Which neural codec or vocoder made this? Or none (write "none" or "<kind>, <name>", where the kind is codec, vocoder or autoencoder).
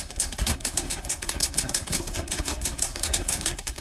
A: codec, SNAC